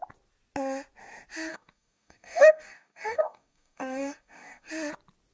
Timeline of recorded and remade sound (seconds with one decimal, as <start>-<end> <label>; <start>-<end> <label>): 0.0-1.5 recorded; 1.5-4.7 remade; 4.7-5.3 recorded